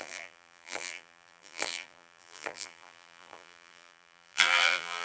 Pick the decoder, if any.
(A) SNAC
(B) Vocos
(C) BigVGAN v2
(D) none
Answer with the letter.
C